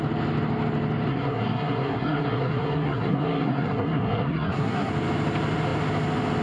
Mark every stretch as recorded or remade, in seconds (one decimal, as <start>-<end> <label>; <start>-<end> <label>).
0.0-1.1 recorded; 1.1-4.9 remade; 4.9-6.4 recorded